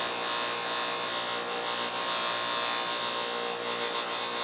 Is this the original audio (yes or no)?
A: yes